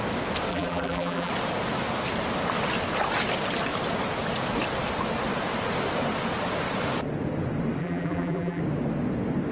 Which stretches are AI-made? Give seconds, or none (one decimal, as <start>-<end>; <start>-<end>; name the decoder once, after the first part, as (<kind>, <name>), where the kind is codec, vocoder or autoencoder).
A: 0.5-1.3 (vocoder, BigVGAN v2); 7.8-8.6